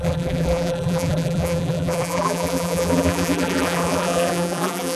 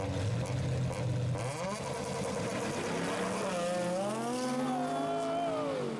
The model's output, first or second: first